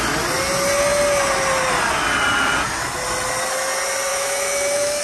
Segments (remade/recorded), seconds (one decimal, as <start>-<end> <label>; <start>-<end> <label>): 0.0-4.1 recorded; 4.1-5.0 remade